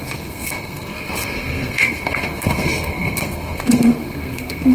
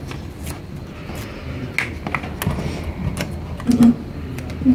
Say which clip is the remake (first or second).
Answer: first